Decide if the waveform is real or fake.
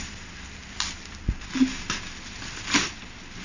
real